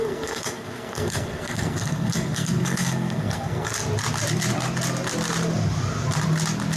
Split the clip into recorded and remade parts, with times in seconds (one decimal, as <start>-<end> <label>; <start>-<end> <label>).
0.0-3.7 remade; 3.7-6.8 recorded